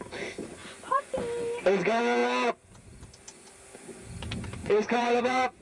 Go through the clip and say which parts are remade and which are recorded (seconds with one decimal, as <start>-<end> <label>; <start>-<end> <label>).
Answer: 0.0-0.6 recorded; 0.6-1.2 remade; 1.2-4.6 recorded; 4.6-5.6 remade